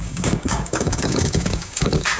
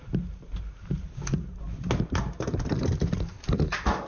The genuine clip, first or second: second